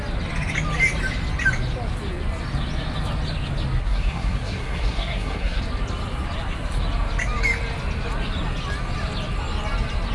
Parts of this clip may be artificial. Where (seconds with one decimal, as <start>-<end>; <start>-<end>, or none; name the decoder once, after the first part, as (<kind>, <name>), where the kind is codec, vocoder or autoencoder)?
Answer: 3.8-5.6 (codec, SNAC)